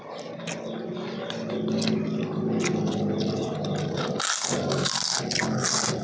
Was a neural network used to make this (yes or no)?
no